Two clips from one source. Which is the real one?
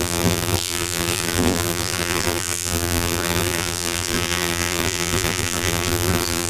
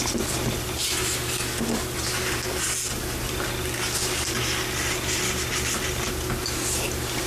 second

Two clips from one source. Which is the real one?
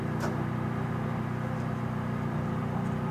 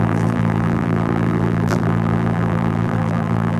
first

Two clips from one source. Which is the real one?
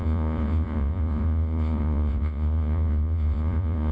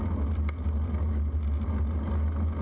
second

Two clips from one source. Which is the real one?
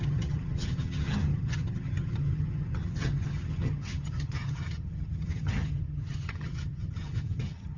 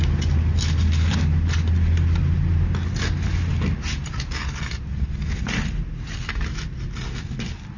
second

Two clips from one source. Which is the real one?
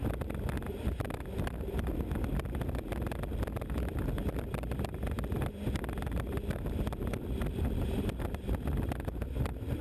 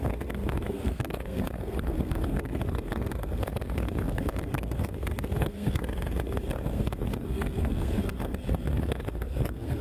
first